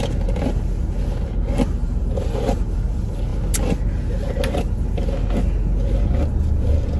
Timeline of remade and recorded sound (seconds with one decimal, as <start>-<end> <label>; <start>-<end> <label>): 0.0-1.8 recorded; 1.8-2.4 remade; 2.4-7.0 recorded